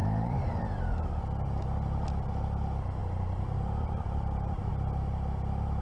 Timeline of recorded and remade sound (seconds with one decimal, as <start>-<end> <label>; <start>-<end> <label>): 0.0-0.8 remade; 0.8-3.0 recorded; 3.0-4.7 remade; 4.7-5.8 recorded